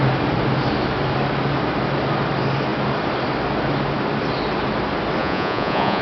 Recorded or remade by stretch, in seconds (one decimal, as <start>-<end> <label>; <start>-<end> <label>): 0.0-5.2 recorded; 5.2-6.0 remade